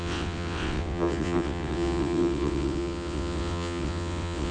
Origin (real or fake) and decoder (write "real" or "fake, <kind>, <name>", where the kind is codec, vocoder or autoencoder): fake, vocoder, WaveNeXt